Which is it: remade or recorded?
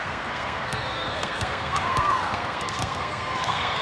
remade